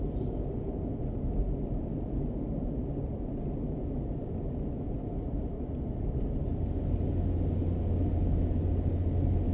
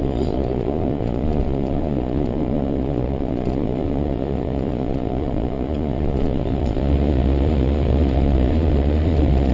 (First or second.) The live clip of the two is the first